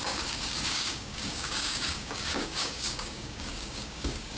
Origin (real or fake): fake